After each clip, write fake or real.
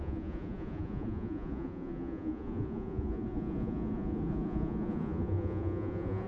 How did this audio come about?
fake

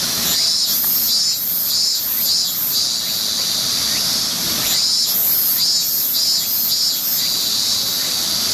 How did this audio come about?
real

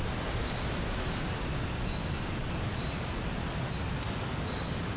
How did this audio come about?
real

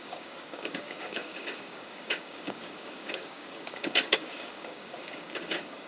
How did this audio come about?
fake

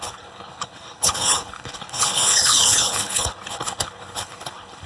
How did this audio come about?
fake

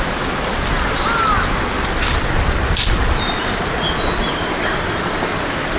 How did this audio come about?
real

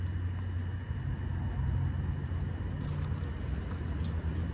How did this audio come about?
real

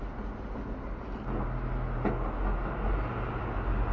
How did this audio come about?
real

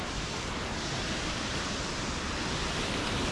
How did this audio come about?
real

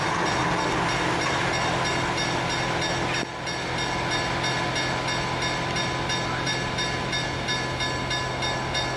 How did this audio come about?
real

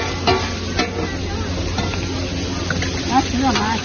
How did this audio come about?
real